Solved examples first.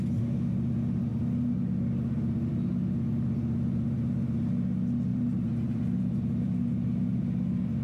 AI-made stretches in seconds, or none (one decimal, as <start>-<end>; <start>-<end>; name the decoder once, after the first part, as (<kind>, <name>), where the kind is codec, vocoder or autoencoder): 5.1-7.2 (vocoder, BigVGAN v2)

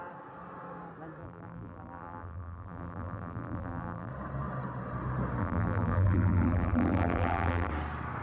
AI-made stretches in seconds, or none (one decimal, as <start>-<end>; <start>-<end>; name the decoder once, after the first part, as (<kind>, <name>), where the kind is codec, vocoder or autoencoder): 1.2-4.1 (vocoder, BigVGAN v2); 5.4-7.7

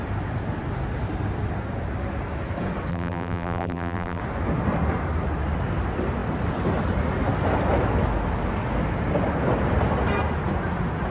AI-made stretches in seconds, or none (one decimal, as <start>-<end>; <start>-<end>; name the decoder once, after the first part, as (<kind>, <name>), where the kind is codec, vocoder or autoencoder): 2.9-4.2 (vocoder, BigVGAN v2)

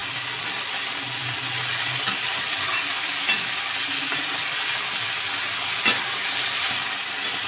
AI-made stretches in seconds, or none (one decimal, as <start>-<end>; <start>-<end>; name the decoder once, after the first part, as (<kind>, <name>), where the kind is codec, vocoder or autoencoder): 0.0-4.5 (vocoder, BigVGAN v2)

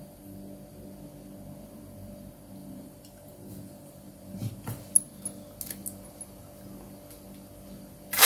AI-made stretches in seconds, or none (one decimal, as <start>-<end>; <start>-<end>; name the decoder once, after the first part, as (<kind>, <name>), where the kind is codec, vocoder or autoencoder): 2.6-4.9 (vocoder, BigVGAN v2)